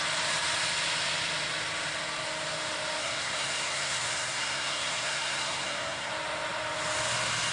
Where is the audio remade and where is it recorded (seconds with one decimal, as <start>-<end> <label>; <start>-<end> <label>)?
0.0-3.0 recorded; 3.0-6.1 remade; 6.1-7.5 recorded